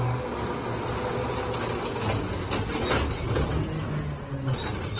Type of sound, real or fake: real